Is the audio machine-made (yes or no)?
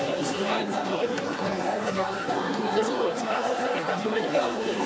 yes